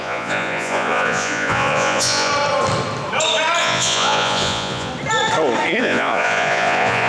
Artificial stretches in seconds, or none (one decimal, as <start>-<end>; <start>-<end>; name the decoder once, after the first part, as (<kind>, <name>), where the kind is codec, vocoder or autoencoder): 0.0-2.3 (vocoder, Vocos); 3.6-4.9; 5.8-7.1